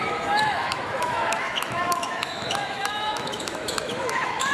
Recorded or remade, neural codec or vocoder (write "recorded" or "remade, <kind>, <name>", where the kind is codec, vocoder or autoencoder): remade, autoencoder, DAC-VAE